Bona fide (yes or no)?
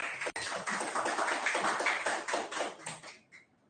yes